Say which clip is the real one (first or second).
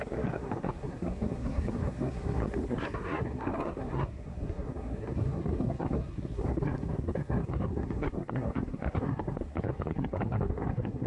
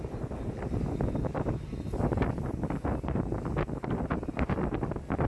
second